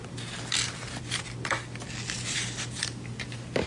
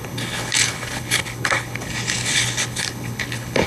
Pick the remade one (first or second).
second